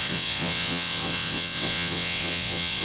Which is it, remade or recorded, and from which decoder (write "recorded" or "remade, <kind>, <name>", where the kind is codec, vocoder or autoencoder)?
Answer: remade, vocoder, WaveNeXt